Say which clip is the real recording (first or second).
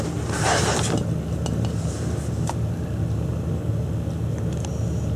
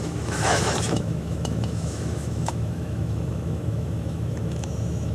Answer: first